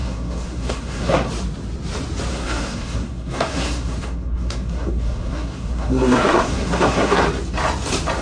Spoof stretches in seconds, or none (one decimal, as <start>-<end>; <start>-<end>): 0.0-1.3; 2.3-7.2